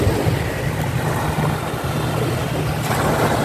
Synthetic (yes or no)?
no